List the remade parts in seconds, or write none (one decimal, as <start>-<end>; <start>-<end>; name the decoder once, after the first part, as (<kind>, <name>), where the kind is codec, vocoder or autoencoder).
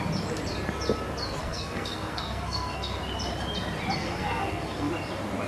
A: 1.4-3.0 (codec, SNAC); 4.0-4.9